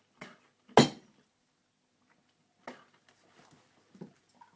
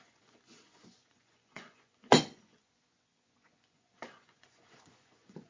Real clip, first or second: first